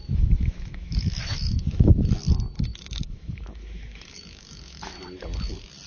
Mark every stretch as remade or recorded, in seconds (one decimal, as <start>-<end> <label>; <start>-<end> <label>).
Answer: 0.0-1.9 remade; 1.9-2.7 recorded; 2.7-5.0 remade; 5.0-5.9 recorded